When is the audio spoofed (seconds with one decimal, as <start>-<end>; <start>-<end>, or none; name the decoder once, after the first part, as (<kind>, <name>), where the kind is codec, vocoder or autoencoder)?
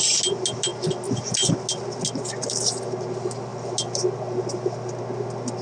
none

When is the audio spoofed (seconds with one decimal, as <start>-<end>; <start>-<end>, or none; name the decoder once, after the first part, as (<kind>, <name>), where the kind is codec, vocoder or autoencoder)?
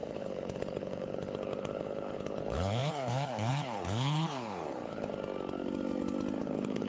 0.0-5.1 (codec, HILCodec); 6.4-6.9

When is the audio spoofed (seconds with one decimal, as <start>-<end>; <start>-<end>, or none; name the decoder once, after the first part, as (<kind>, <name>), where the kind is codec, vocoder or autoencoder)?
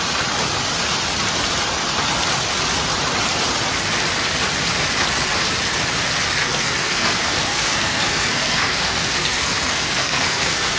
6.4-10.8 (codec, SNAC)